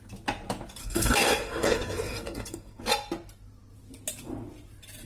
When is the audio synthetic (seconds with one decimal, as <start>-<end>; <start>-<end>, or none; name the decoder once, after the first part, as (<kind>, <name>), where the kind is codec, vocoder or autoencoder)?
0.8-2.8 (codec, SNAC)